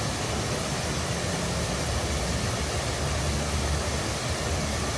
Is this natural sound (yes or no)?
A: yes